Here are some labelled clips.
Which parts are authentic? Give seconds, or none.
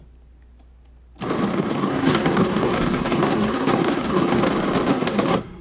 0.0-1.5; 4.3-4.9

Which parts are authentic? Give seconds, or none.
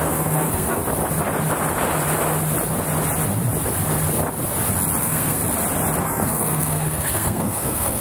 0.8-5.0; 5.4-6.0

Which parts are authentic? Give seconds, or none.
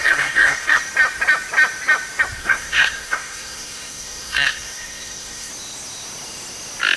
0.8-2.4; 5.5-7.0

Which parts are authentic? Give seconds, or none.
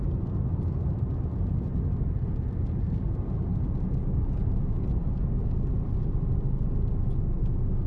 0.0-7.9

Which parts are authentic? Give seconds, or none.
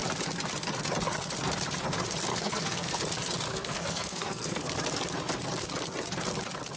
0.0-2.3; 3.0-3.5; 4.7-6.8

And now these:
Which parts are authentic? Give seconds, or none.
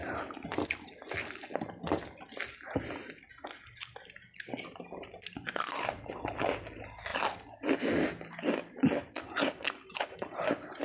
0.0-10.8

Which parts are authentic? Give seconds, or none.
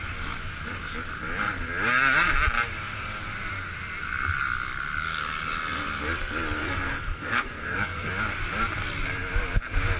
0.0-6.6; 8.1-10.0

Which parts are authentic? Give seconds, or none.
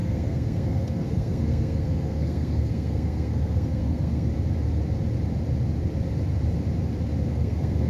4.3-7.3